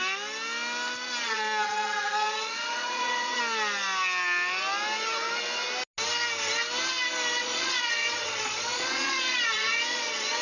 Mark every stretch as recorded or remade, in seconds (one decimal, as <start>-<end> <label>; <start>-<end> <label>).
0.0-1.2 recorded; 1.2-3.4 remade; 3.4-7.4 recorded; 7.4-10.4 remade

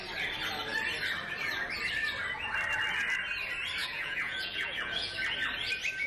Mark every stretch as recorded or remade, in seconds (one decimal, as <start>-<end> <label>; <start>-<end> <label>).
0.0-3.8 recorded; 3.8-5.1 remade; 5.1-6.1 recorded

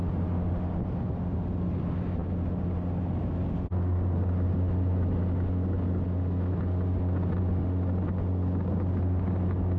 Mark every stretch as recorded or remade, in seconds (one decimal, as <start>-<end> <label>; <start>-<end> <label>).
0.0-9.8 recorded

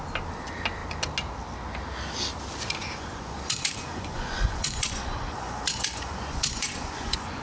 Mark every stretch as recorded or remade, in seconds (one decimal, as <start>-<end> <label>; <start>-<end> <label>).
0.0-2.8 recorded; 2.8-7.4 remade

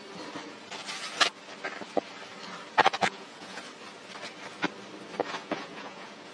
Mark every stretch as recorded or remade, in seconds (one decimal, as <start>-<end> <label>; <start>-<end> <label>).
0.0-3.0 recorded; 3.0-3.6 remade; 3.6-5.4 recorded; 5.4-6.3 remade

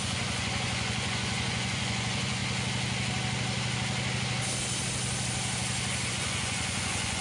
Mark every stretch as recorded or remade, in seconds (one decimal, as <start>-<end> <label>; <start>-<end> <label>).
0.0-2.4 remade; 2.4-6.1 recorded; 6.1-7.2 remade

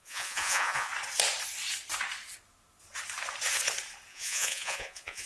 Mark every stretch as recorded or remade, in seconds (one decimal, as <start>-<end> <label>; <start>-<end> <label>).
0.0-0.9 remade; 0.9-4.1 recorded; 4.1-5.3 remade